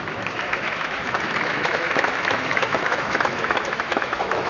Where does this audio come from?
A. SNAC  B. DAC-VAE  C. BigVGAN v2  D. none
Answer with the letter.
B